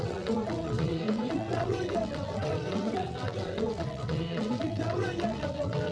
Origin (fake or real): fake